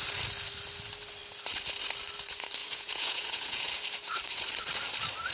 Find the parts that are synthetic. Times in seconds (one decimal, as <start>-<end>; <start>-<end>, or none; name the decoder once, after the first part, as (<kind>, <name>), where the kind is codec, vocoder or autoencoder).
2.6-3.8 (vocoder, Vocos)